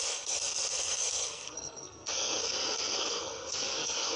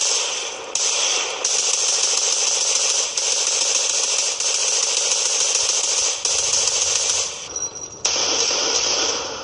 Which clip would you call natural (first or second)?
second